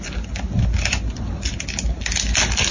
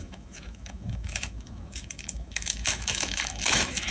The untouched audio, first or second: first